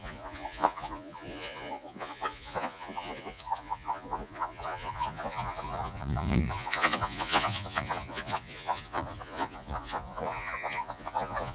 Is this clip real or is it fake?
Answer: fake